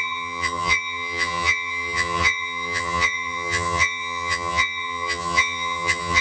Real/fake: fake